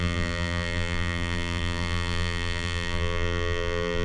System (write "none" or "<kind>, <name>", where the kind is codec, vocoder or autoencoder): vocoder, BigVGAN v2